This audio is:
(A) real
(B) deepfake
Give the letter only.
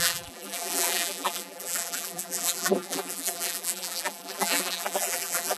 B